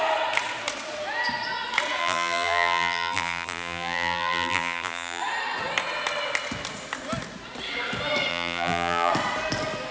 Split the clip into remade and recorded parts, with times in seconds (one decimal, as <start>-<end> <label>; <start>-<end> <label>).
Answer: 0.0-2.0 recorded; 2.0-5.2 remade; 5.2-8.3 recorded; 8.3-9.1 remade; 9.1-9.9 recorded